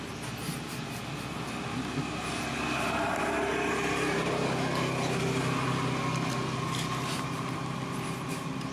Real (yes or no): yes